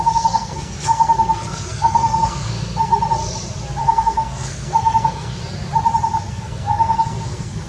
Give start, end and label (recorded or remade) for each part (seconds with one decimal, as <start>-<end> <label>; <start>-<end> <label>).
0.0-2.9 remade; 2.9-3.8 recorded; 3.8-5.4 remade; 5.4-6.3 recorded; 6.3-7.7 remade